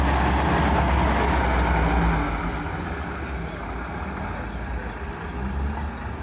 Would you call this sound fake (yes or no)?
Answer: no